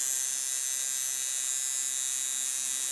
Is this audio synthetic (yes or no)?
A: no